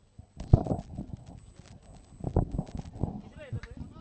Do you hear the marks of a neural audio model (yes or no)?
no